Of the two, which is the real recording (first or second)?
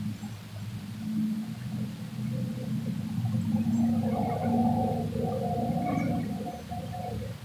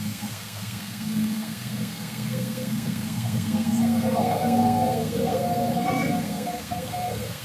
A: first